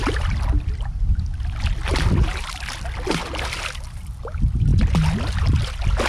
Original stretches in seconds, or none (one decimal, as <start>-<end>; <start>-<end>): 0.0-6.1